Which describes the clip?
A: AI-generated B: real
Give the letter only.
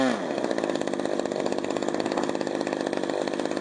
B